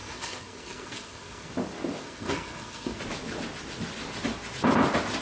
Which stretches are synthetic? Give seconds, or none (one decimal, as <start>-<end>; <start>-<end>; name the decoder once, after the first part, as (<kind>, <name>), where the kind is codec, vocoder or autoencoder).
0.0-1.5 (codec, SNAC); 2.0-3.0